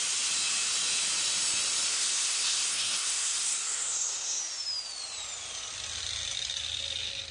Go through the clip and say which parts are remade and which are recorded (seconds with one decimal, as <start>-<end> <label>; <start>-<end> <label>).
0.0-1.9 recorded; 1.9-4.4 remade; 4.4-7.3 recorded